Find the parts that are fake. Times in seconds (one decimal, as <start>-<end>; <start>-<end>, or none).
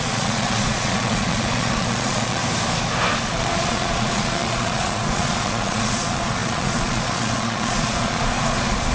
0.0-2.4; 3.2-8.9